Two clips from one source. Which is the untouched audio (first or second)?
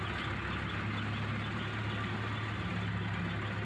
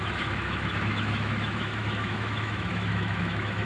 first